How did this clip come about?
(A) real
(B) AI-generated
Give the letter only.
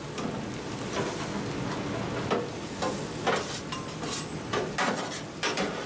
A